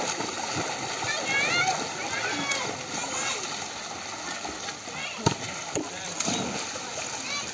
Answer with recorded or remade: recorded